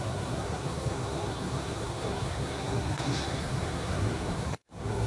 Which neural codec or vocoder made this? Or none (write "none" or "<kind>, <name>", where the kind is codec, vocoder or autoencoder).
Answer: codec, SNAC